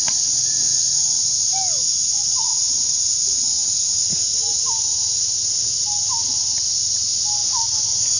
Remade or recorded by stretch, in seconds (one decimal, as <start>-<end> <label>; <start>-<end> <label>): 0.0-8.2 recorded